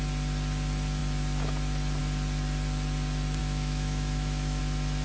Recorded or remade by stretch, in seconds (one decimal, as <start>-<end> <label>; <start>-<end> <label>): 0.0-3.4 recorded; 3.4-4.6 remade; 4.6-5.0 recorded